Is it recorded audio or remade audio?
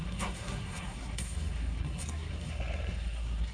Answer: remade